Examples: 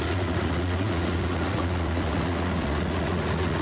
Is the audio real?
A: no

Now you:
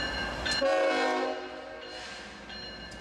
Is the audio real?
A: yes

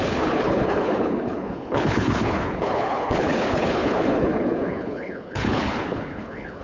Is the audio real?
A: no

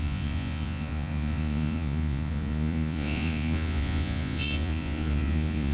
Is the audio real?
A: no